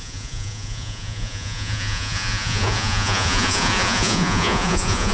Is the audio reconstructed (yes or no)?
yes